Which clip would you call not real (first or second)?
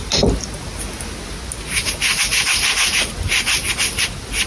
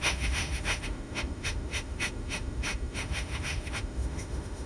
second